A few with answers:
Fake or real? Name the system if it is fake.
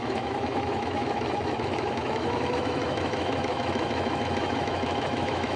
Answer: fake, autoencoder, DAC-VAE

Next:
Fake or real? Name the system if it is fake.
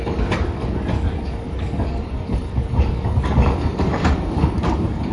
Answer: fake, codec, DAC